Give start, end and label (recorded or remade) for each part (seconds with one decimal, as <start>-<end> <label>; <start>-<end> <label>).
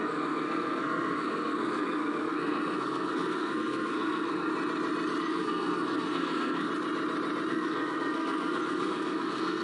0.0-4.5 remade; 4.5-5.2 recorded; 5.2-6.7 remade; 6.7-7.5 recorded; 7.5-9.6 remade